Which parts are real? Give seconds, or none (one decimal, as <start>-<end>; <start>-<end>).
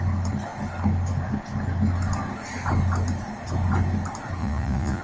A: 0.0-4.4